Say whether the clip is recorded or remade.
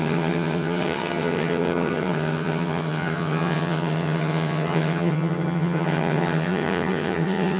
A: remade